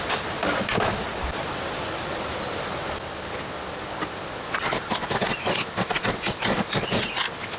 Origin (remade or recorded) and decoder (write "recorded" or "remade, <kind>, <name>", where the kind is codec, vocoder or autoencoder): recorded